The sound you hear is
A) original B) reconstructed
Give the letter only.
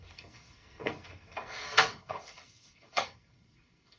B